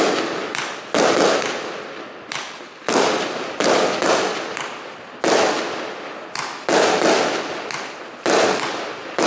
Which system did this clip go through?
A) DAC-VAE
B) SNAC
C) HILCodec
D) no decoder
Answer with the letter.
D